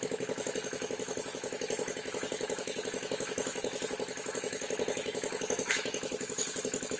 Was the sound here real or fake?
fake